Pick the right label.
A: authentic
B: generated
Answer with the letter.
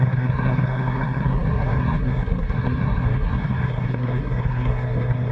B